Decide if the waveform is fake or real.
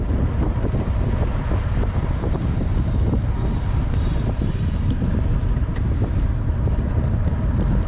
fake